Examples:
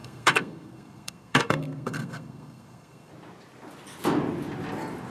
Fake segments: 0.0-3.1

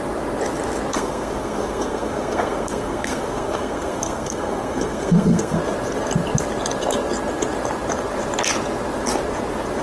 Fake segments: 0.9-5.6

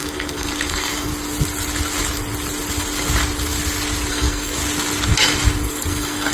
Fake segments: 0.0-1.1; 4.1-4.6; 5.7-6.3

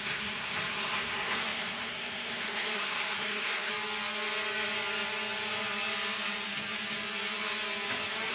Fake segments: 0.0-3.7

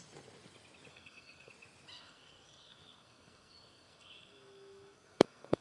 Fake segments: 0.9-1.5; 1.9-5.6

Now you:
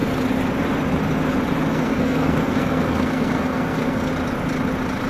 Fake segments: 1.7-4.1

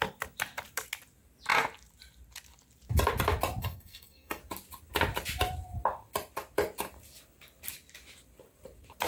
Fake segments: 3.6-4.4